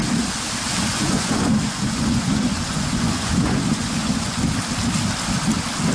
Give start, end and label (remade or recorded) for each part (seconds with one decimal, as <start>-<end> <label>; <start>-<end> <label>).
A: 0.0-0.9 recorded; 0.9-4.4 remade; 4.4-5.9 recorded